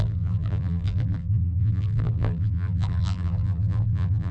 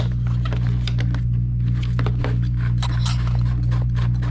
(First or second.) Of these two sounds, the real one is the second